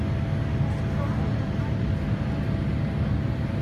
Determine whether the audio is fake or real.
real